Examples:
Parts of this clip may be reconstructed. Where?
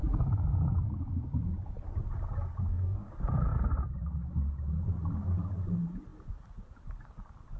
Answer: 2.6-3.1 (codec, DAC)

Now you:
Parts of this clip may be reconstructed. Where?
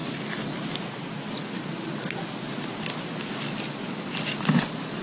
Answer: none